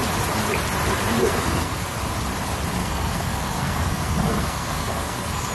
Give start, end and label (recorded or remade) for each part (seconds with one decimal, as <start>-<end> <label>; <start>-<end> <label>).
0.0-1.2 recorded; 1.2-2.0 remade; 2.0-2.8 recorded; 2.8-5.5 remade